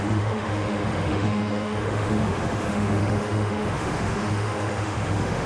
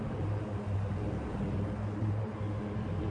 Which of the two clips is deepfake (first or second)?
first